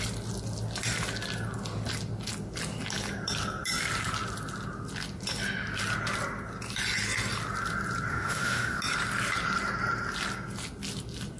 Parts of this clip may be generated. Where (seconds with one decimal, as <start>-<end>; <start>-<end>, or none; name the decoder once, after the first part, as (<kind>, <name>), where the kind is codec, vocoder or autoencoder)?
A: 8.1-8.8 (autoencoder, DAC-VAE)